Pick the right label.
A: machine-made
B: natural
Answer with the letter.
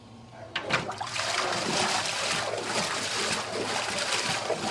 B